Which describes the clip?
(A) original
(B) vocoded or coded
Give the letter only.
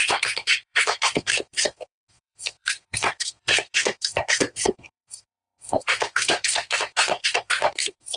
B